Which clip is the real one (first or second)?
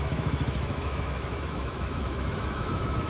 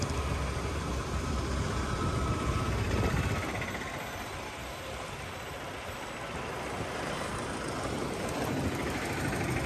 second